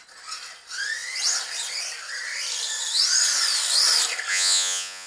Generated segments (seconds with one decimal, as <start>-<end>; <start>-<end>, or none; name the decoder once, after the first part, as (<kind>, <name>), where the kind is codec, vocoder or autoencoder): 4.3-5.1 (vocoder, Vocos)